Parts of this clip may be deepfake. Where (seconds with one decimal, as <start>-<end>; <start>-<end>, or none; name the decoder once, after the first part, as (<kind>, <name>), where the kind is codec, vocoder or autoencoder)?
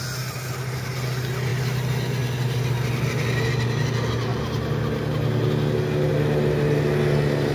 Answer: none